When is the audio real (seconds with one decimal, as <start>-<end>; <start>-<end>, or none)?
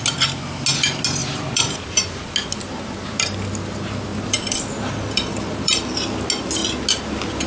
0.0-1.2; 2.3-4.1; 5.9-7.5